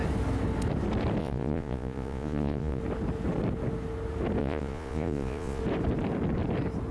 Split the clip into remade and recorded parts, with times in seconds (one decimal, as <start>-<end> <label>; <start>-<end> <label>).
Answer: 0.0-1.2 recorded; 1.2-2.8 remade; 2.8-4.4 recorded; 4.4-5.6 remade; 5.6-6.9 recorded